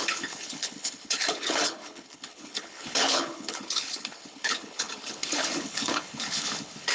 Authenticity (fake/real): fake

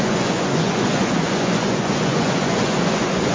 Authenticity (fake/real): fake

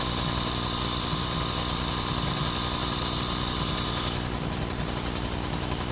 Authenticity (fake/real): real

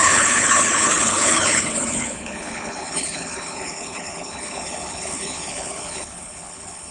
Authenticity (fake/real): fake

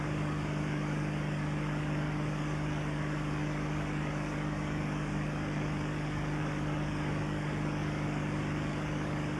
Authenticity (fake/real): fake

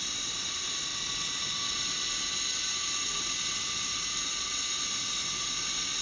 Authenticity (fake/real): real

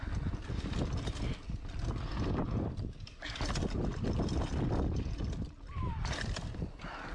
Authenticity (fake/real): real